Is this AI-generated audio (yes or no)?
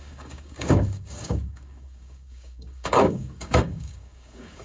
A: yes